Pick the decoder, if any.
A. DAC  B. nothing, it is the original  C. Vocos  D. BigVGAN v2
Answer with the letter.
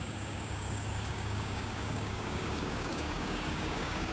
A